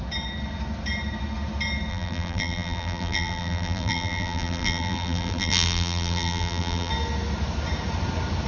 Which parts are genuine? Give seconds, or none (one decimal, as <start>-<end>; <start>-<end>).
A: 0.0-1.9; 6.9-8.5